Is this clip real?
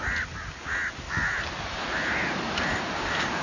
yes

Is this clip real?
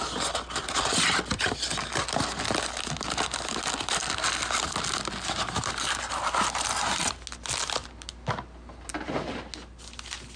yes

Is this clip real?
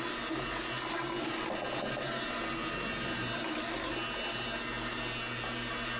yes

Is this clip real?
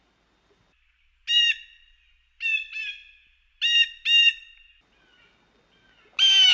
yes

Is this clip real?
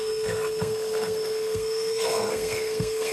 no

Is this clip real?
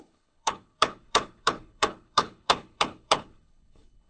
no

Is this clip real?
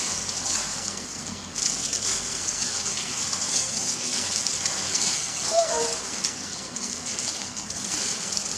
no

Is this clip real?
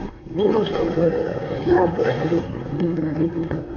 no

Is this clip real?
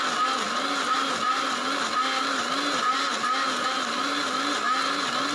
yes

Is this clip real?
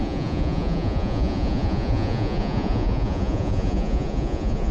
no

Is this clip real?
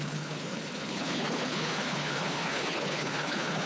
no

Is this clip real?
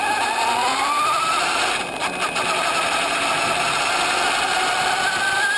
yes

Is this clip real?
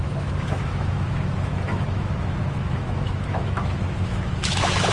no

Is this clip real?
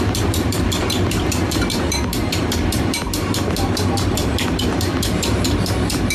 no